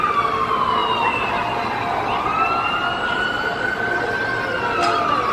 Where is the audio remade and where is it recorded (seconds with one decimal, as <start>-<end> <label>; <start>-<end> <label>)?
0.0-5.3 recorded